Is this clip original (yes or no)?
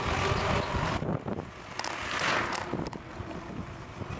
yes